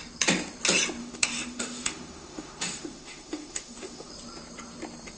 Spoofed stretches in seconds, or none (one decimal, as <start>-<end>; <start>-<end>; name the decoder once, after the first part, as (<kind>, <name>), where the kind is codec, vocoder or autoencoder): 1.0-4.1 (autoencoder, DAC-VAE)